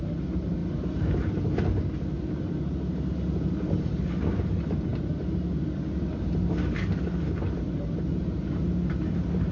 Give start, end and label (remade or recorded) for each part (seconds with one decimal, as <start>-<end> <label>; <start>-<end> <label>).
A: 0.0-9.5 recorded

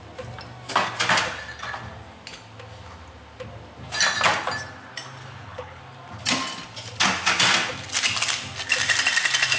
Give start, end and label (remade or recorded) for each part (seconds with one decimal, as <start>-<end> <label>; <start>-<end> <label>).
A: 0.0-5.2 recorded; 5.2-5.8 remade; 5.8-9.6 recorded

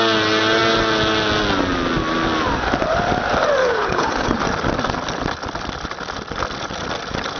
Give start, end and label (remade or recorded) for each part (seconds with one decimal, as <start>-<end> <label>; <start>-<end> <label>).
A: 0.0-3.6 recorded; 3.6-4.4 remade; 4.4-7.4 recorded

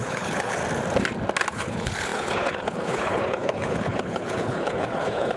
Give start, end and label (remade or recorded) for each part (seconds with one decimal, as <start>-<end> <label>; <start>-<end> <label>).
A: 0.0-0.6 remade; 0.6-1.5 recorded; 1.5-5.4 remade

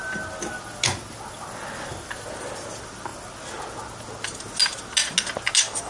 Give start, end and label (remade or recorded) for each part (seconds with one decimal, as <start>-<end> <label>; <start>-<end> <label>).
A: 0.0-5.9 recorded

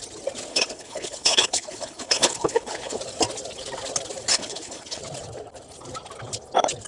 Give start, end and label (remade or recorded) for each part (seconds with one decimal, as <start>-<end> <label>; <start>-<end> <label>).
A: 0.0-0.5 recorded; 0.5-3.0 remade; 3.0-4.3 recorded; 4.3-5.0 remade; 5.0-6.9 recorded

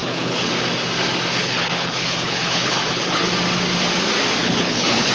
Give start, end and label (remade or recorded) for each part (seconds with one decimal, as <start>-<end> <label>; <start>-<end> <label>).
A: 0.0-0.5 remade; 0.5-1.4 recorded; 1.4-3.3 remade; 3.3-4.4 recorded; 4.4-5.1 remade

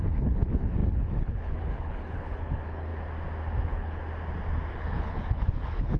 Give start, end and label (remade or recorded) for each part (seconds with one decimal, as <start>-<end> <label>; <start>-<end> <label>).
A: 0.0-2.9 remade; 2.9-3.6 recorded; 3.6-4.0 remade; 4.0-4.7 recorded; 4.7-6.0 remade